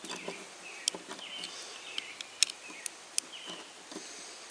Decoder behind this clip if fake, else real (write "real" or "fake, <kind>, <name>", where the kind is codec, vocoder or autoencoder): real